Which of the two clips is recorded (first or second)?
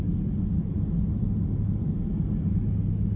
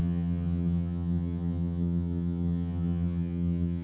first